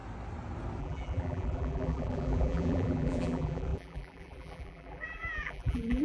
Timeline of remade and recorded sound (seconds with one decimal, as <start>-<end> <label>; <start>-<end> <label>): 0.0-0.8 recorded; 0.8-6.0 remade

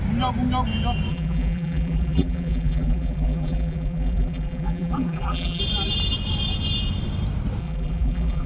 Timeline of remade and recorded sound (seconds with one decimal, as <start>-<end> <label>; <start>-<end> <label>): 0.0-1.1 recorded; 1.1-5.6 remade; 5.6-7.6 recorded; 7.6-8.5 remade

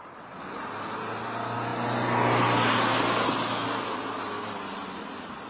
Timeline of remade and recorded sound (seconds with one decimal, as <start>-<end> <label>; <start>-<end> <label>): 0.0-5.5 recorded

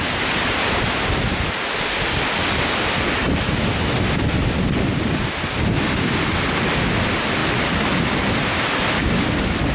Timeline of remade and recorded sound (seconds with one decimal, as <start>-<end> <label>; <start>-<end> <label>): 0.0-9.7 recorded

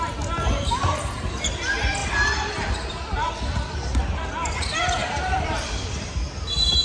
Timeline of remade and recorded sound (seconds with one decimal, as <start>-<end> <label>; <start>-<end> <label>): 0.0-0.8 recorded; 0.8-1.6 remade; 1.6-2.0 recorded; 2.0-3.3 remade; 3.3-5.0 recorded; 5.0-6.1 remade; 6.1-6.8 recorded

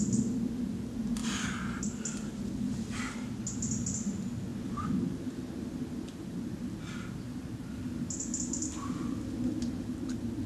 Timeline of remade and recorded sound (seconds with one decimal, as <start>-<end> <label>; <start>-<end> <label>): 0.0-1.2 recorded; 1.2-1.8 remade; 1.8-10.5 recorded